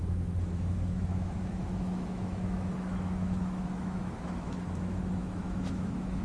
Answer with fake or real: fake